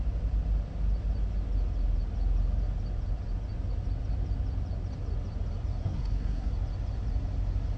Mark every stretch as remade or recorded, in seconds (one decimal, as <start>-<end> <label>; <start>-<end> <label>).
0.0-5.8 recorded; 5.8-6.5 remade; 6.5-7.8 recorded